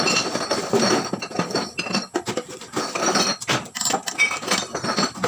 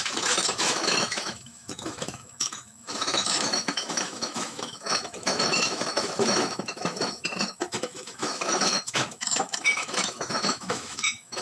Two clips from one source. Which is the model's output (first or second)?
second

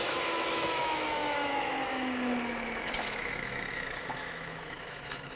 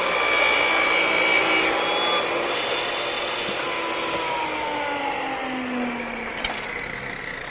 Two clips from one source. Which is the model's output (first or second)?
first